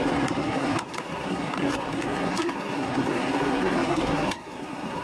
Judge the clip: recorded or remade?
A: remade